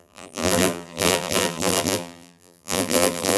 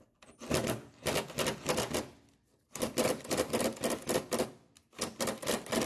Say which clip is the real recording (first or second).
second